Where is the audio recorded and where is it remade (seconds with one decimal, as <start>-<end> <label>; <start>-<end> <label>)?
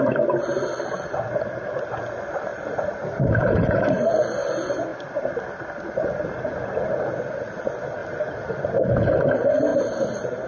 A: 0.0-2.5 recorded; 2.5-3.7 remade; 3.7-8.0 recorded; 8.0-8.5 remade; 8.5-9.7 recorded; 9.7-10.5 remade